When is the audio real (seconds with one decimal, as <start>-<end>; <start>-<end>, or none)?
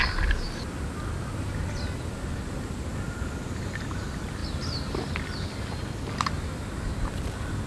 0.0-7.7